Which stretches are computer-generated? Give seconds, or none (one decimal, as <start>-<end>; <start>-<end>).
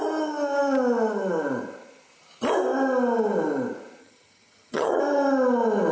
4.0-5.0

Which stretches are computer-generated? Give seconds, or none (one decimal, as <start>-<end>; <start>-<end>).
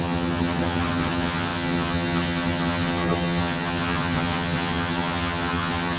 0.0-6.0